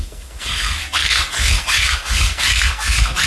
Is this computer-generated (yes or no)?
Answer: yes